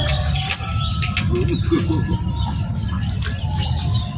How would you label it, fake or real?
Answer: real